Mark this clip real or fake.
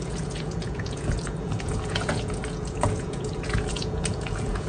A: fake